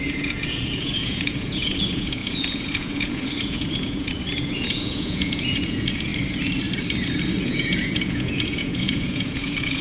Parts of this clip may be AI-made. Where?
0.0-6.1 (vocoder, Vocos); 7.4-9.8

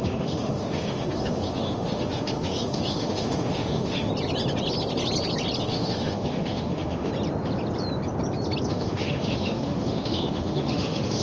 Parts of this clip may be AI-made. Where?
0.0-4.1 (autoencoder, DAC-VAE); 5.6-7.1; 8.7-11.2

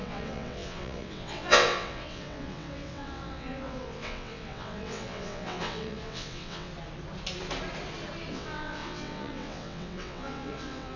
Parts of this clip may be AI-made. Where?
0.0-6.7 (vocoder, WaveNeXt); 8.3-11.0